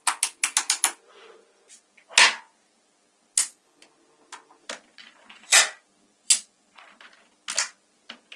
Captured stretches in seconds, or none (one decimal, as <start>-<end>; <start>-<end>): 0.0-4.9; 5.6-6.1; 7.0-8.4